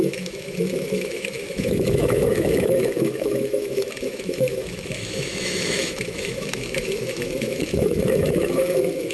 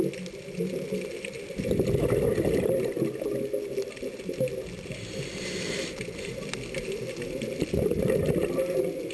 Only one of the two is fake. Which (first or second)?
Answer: first